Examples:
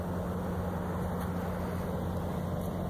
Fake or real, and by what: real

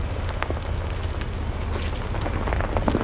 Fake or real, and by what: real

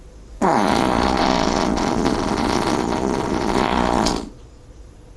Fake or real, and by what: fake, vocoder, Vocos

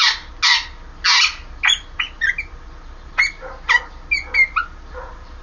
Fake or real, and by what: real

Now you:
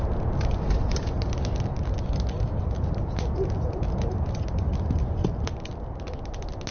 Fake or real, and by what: real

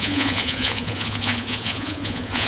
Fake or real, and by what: fake, vocoder, Vocos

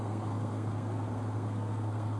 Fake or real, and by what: fake, codec, SNAC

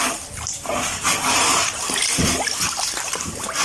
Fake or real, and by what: real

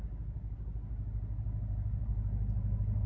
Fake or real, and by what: real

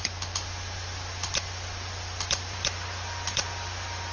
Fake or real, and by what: real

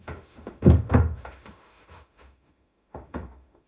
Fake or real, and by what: fake, autoencoder, DAC-VAE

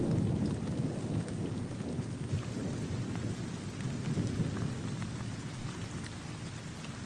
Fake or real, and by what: real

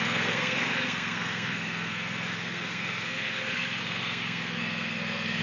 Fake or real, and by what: fake, codec, SNAC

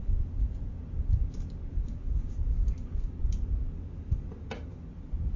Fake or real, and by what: real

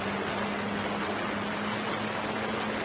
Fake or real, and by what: real